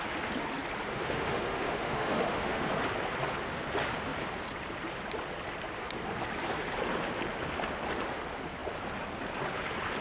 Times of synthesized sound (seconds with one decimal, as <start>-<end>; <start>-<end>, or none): 0.9-2.7

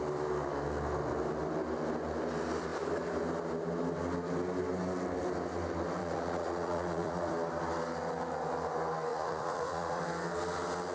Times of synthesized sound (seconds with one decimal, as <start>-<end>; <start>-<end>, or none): 6.0-7.3; 9.1-10.0

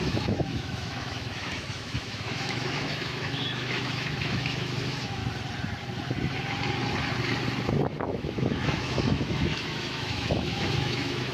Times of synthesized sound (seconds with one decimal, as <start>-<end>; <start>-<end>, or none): 0.0-5.2; 8.0-11.3

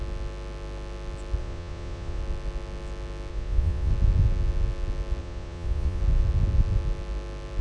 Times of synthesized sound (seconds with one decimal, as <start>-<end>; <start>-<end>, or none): 1.4-2.2; 3.3-3.9; 5.2-6.0